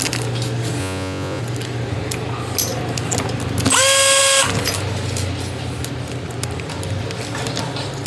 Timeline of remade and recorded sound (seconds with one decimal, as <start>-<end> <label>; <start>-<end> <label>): 0.0-0.8 recorded; 0.8-1.4 remade; 1.4-8.1 recorded